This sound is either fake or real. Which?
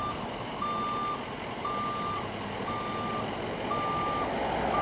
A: real